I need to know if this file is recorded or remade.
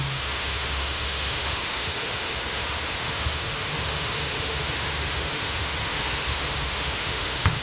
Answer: remade